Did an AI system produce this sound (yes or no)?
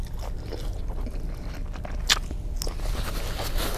no